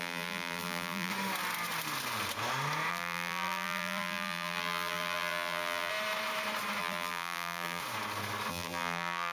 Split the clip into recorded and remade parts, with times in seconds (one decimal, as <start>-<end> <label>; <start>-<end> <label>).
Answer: 0.0-1.1 remade; 1.1-2.9 recorded; 2.9-5.9 remade; 5.9-6.8 recorded; 6.8-7.8 remade; 7.8-8.5 recorded; 8.5-9.3 remade